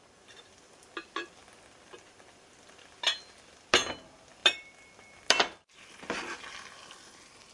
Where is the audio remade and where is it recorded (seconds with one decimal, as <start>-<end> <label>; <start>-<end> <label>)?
0.0-7.5 recorded